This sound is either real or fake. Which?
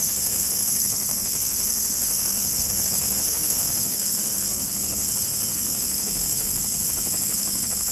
fake